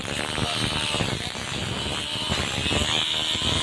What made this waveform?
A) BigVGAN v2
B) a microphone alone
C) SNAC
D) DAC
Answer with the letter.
B